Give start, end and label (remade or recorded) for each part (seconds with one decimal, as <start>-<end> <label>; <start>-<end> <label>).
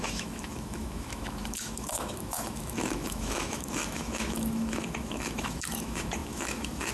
0.0-6.9 remade